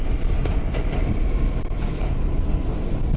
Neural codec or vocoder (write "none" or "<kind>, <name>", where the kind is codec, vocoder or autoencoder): vocoder, BigVGAN v2